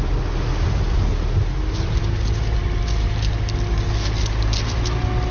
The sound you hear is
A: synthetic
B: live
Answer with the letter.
B